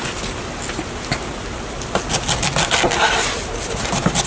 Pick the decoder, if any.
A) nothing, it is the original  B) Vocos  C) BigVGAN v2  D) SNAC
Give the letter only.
A